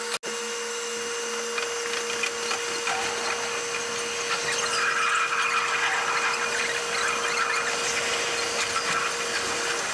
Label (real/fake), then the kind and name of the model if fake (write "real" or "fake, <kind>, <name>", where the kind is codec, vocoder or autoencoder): real